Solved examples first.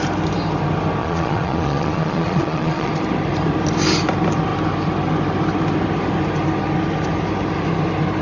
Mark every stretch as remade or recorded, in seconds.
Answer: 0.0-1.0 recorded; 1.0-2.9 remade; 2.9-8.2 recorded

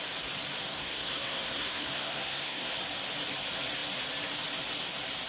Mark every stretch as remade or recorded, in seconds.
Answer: 0.0-0.7 recorded; 0.7-2.7 remade; 2.7-5.3 recorded

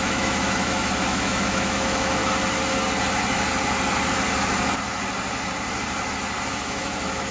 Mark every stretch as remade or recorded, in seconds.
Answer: 0.0-2.2 remade; 2.2-6.5 recorded; 6.5-7.3 remade